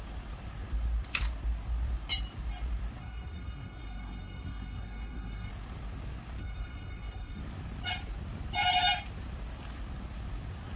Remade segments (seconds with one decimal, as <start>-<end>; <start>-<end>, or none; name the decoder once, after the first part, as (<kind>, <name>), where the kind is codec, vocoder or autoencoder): 3.0-5.5 (codec, SNAC); 6.4-7.4